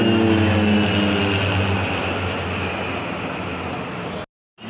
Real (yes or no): yes